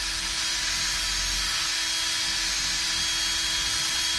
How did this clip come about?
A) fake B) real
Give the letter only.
B